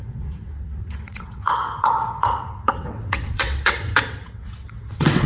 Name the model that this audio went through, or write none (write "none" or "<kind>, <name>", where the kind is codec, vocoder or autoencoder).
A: vocoder, WaveNeXt